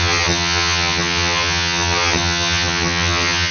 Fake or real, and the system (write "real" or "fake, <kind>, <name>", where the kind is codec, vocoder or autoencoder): fake, vocoder, HiFi-GAN